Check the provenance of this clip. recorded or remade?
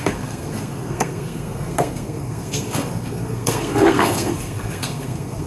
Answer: remade